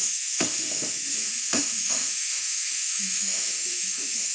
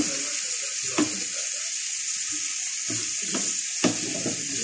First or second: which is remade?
first